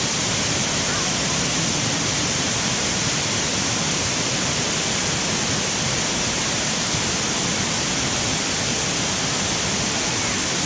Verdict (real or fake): real